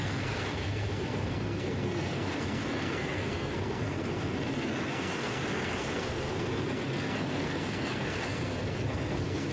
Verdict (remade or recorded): remade